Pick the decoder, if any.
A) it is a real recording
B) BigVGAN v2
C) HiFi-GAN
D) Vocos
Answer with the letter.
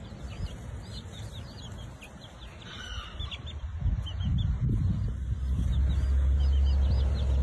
A